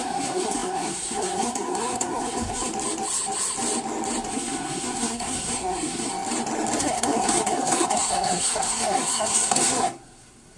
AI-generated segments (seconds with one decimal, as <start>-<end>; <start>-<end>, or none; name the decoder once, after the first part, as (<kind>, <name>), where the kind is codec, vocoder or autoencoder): 0.0-2.7 (codec, SNAC); 4.3-6.1; 6.8-10.6